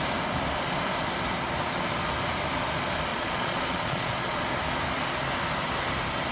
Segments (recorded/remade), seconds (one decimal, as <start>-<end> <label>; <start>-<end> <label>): 0.0-3.1 recorded; 3.1-4.4 remade; 4.4-6.3 recorded